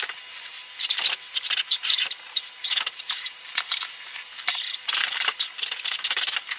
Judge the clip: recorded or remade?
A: remade